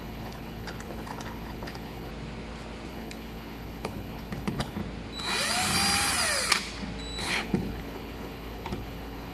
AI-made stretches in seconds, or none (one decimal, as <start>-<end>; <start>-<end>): 0.0-2.1; 2.9-4.8; 7.2-9.3